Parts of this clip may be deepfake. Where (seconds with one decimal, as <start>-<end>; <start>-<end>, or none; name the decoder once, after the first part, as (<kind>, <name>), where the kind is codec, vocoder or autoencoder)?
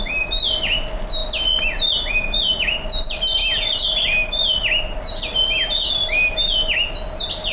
none